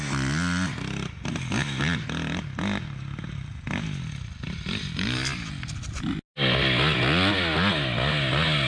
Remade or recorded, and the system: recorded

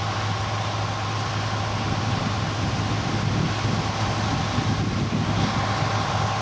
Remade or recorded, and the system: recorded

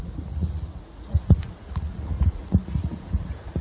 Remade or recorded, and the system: remade, vocoder, Vocos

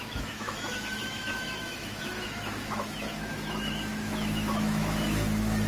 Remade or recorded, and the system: remade, autoencoder, DAC-VAE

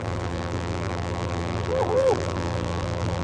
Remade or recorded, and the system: remade, vocoder, BigVGAN v2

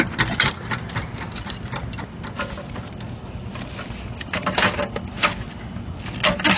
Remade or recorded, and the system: recorded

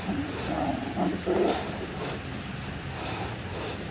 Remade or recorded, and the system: recorded